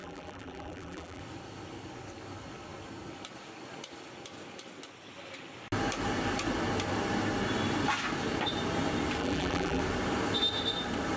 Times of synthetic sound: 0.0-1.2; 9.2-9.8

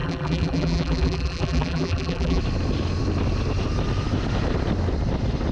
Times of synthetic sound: 0.0-2.4

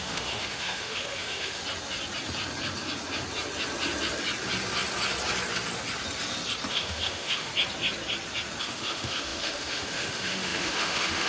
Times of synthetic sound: 0.0-1.6; 6.7-7.5; 8.6-11.3

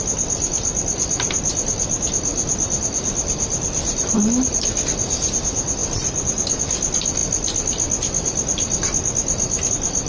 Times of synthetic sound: 2.3-4.9; 5.8-6.6

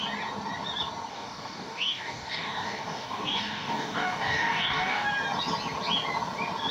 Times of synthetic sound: 1.1-5.1

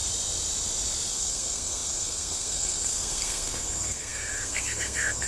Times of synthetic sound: 1.1-5.3

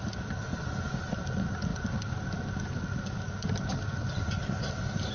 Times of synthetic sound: none

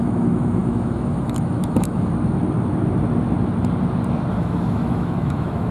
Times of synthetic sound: 0.0-2.1; 4.3-5.7